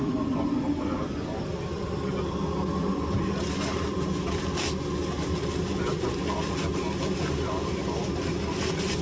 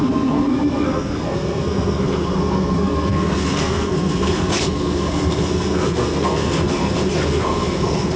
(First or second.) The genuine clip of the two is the first